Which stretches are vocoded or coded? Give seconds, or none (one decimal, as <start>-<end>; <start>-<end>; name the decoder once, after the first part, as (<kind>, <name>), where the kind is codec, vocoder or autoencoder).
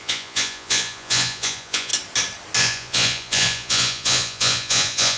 0.0-1.9 (vocoder, Vocos); 2.6-5.2